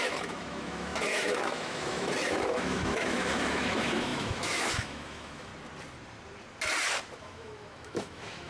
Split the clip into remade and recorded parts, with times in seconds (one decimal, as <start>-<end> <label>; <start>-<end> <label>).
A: 0.0-5.5 remade; 5.5-7.2 recorded; 7.2-8.5 remade